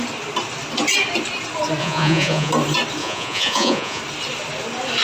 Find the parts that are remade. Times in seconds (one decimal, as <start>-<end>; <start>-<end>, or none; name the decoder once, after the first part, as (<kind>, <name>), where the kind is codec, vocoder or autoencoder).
1.8-2.5 (vocoder, Vocos); 3.0-4.0